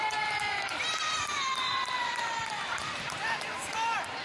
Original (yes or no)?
no